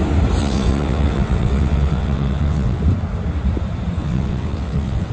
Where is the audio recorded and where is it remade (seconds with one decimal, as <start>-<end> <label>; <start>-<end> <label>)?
0.0-0.4 recorded; 0.4-2.8 remade; 2.8-4.0 recorded; 4.0-5.1 remade